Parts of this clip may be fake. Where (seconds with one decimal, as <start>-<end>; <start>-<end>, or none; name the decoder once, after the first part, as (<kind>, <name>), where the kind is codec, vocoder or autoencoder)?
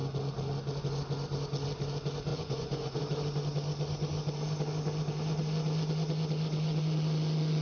2.3-3.0 (vocoder, Vocos)